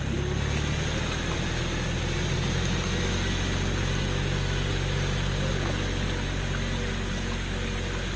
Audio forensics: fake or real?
real